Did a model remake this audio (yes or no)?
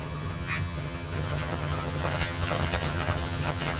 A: yes